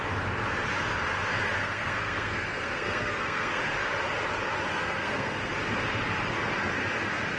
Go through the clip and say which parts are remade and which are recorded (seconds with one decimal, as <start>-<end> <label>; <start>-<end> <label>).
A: 0.0-1.6 recorded; 1.6-3.6 remade; 3.6-4.7 recorded; 4.7-5.5 remade; 5.5-7.4 recorded